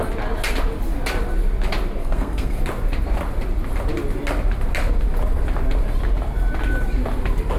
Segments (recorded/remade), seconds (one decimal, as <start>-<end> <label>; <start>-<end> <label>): 0.0-2.0 recorded; 2.0-2.6 remade; 2.6-7.6 recorded